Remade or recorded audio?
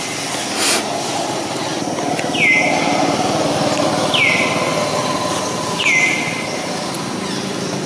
recorded